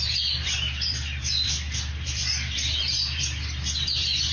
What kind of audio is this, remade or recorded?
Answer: recorded